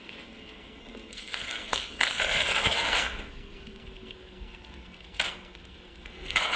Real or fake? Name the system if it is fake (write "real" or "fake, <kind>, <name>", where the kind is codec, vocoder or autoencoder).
fake, codec, SNAC